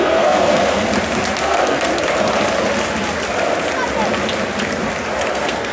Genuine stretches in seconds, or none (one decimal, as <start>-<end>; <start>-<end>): 0.9-1.4; 1.9-5.3